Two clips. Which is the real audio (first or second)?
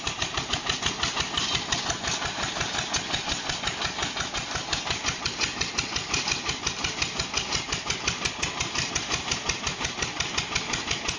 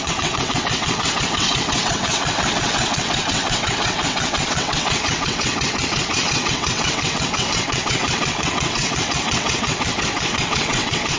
first